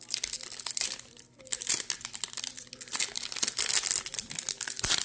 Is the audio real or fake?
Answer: real